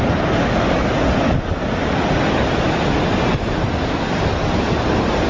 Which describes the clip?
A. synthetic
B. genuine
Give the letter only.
B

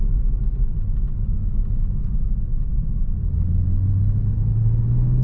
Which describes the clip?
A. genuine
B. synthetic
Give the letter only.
A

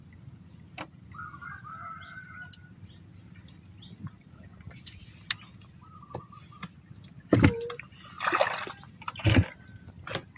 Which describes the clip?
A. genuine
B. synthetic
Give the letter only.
A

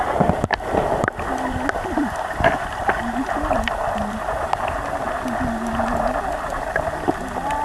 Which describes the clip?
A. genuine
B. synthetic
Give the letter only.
A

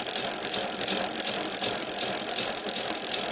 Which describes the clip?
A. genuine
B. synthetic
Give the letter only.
A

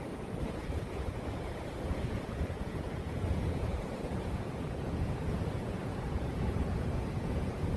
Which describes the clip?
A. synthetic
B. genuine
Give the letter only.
A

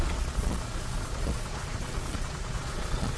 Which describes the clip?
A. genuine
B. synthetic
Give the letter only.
B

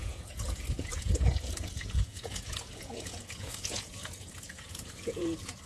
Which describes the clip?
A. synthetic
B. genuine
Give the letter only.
A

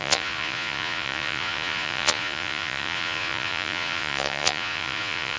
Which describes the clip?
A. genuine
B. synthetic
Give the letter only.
B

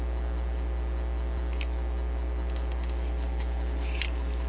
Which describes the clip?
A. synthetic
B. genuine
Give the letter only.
B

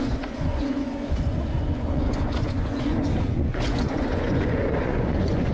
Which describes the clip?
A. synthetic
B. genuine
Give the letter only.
A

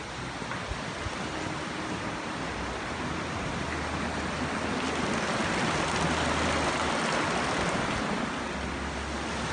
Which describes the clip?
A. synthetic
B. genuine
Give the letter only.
B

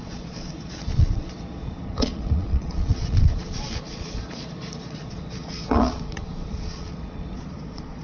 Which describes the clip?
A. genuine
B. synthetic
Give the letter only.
B